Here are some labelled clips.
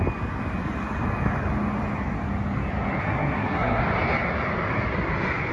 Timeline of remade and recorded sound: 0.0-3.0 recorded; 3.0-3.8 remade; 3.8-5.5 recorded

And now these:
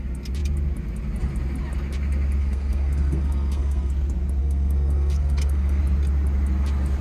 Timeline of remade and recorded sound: 0.0-2.4 recorded; 2.4-3.9 remade; 3.9-4.4 recorded; 4.4-5.8 remade; 5.8-7.0 recorded

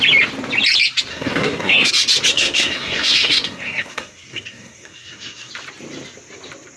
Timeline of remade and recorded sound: 0.0-1.1 recorded; 1.1-1.9 remade; 1.9-2.3 recorded; 2.3-5.5 remade; 5.5-6.8 recorded

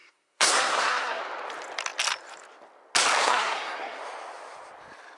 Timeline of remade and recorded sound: 0.0-1.2 remade; 1.2-3.2 recorded; 3.2-4.0 remade; 4.0-5.2 recorded